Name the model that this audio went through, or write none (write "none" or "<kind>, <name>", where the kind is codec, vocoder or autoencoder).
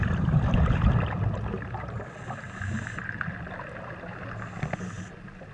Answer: none